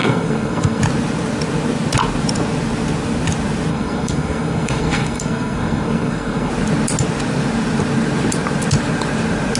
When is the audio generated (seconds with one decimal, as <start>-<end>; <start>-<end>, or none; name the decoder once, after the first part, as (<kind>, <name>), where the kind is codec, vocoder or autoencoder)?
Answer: 0.0-0.8 (codec, SNAC); 3.7-6.5